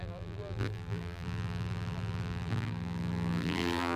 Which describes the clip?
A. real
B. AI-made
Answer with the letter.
B